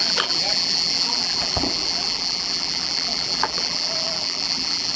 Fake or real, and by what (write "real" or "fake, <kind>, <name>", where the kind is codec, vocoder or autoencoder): fake, vocoder, BigVGAN v2